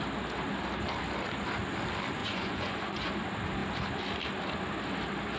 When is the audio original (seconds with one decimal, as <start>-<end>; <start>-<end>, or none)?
0.0-2.2; 3.1-5.4